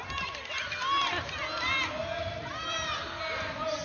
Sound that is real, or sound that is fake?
real